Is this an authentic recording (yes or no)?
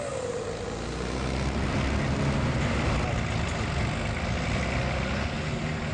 yes